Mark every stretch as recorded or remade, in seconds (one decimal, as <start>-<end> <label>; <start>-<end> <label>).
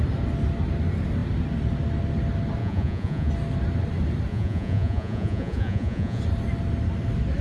0.0-2.6 recorded; 2.6-3.3 remade; 3.3-4.3 recorded; 4.3-6.2 remade; 6.2-7.4 recorded